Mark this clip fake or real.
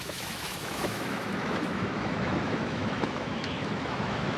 fake